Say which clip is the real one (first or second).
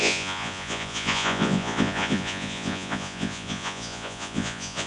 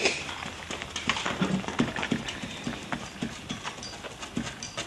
second